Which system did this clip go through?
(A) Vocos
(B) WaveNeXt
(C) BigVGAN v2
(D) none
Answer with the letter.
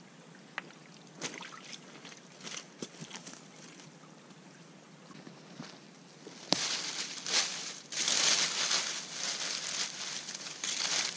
D